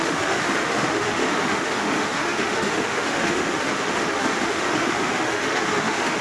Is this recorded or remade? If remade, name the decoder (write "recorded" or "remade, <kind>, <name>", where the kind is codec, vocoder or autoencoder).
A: remade, autoencoder, DAC-VAE